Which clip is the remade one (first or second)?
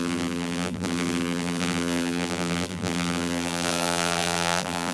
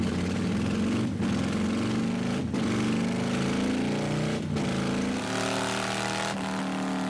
first